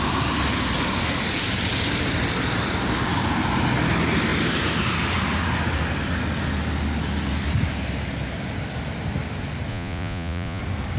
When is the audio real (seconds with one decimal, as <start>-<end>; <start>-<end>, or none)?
0.0-9.7; 10.6-11.0